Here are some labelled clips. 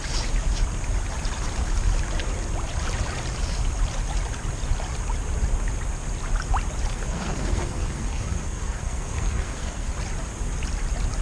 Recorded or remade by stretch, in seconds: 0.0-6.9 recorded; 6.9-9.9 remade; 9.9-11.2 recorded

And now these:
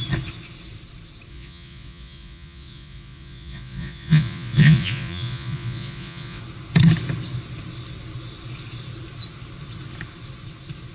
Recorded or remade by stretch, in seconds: 0.0-1.3 recorded; 1.3-6.4 remade; 6.4-10.9 recorded